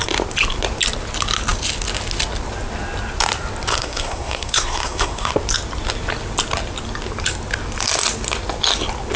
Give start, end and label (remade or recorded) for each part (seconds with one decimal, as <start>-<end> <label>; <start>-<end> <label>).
0.0-3.7 recorded; 3.7-5.3 remade; 5.3-9.2 recorded